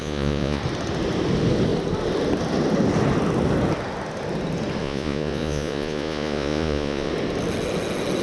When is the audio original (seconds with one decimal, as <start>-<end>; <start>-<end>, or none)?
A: 0.6-4.8; 7.1-8.2